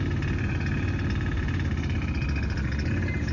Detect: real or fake real